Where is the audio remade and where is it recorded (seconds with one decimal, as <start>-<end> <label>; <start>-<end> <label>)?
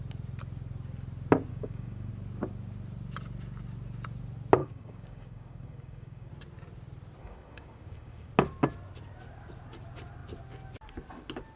0.0-1.5 recorded; 1.5-2.1 remade; 2.1-4.6 recorded; 4.6-6.3 remade; 6.3-7.2 recorded; 7.2-8.3 remade; 8.3-11.6 recorded